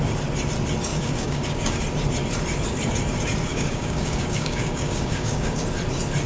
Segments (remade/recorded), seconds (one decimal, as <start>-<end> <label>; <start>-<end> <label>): 0.0-0.9 recorded; 0.9-1.8 remade; 1.8-3.5 recorded; 3.5-5.6 remade; 5.6-6.3 recorded